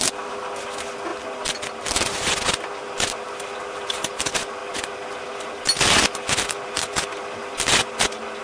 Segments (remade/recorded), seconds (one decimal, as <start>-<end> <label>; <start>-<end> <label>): 0.0-8.4 recorded